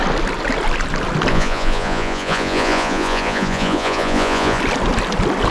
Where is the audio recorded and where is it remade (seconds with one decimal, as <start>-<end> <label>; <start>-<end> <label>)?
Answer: 0.0-1.3 recorded; 1.3-4.6 remade; 4.6-5.5 recorded